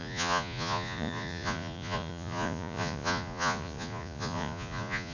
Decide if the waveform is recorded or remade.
remade